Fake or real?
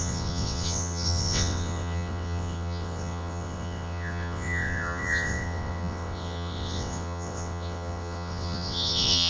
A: fake